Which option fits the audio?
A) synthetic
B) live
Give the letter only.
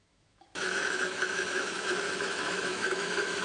A